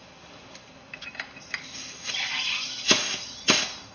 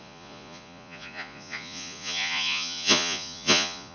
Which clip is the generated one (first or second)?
second